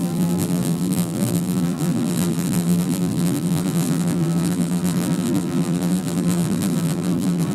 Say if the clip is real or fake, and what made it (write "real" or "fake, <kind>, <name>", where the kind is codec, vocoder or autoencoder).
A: fake, vocoder, BigVGAN v2